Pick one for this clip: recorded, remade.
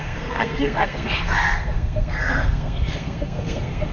remade